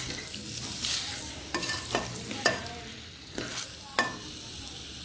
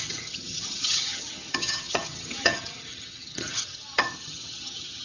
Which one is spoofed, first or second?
second